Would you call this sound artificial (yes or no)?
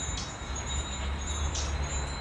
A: no